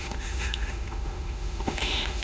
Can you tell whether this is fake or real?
fake